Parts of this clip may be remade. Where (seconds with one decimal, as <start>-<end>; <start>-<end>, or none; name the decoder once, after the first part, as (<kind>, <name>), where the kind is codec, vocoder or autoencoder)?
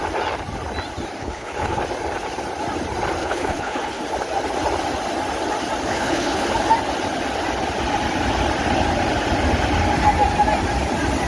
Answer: 1.2-1.8 (codec, HILCodec); 3.2-4.0; 5.9-6.5